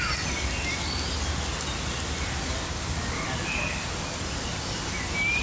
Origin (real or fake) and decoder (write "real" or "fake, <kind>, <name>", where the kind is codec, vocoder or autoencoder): real